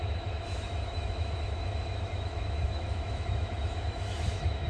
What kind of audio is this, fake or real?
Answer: fake